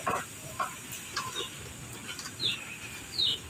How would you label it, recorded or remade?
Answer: recorded